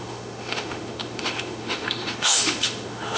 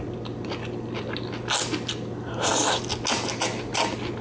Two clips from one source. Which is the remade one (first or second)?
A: first